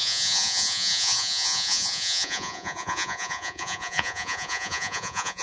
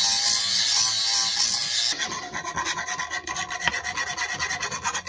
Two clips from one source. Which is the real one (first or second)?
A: second